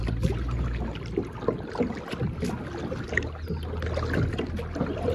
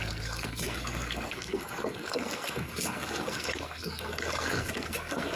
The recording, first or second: first